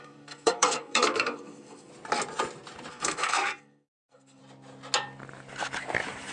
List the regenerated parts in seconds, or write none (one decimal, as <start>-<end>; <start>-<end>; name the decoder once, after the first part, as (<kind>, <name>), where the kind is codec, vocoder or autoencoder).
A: 0.0-1.9 (codec, SNAC); 2.9-4.4